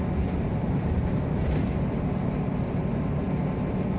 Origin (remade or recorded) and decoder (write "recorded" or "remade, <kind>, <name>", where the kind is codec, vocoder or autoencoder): recorded